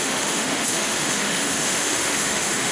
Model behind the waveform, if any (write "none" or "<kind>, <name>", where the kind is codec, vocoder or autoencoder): autoencoder, DAC-VAE